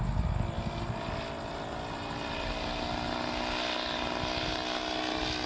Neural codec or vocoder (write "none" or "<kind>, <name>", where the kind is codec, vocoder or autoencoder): none